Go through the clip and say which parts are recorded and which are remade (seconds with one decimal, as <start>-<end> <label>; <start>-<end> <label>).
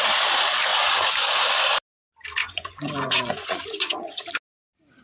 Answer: 0.0-2.4 recorded; 2.4-4.2 remade; 4.2-5.0 recorded